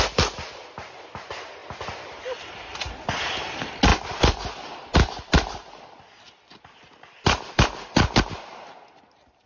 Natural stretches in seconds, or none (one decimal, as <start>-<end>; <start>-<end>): 0.0-9.5